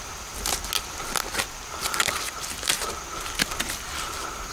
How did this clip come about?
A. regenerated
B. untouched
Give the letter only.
B